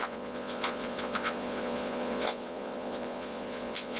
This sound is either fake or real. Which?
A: fake